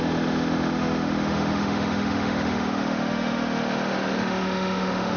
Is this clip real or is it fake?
fake